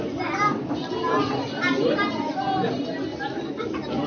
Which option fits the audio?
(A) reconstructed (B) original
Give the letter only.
B